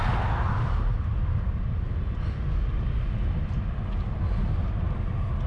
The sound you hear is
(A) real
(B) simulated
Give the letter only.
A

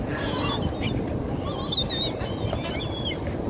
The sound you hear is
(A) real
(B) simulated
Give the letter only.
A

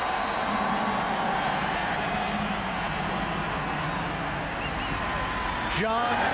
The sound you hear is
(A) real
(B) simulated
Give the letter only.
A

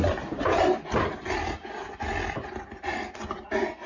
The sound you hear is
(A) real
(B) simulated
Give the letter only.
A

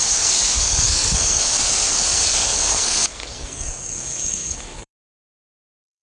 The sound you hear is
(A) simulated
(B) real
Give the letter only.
A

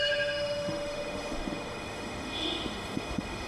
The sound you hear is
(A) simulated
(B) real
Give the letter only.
A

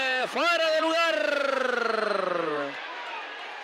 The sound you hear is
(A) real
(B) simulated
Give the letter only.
B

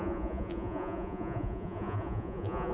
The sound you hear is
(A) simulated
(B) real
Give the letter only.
A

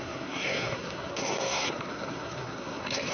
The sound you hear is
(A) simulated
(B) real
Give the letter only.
A